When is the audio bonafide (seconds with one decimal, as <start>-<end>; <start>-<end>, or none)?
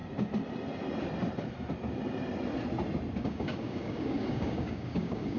0.0-3.2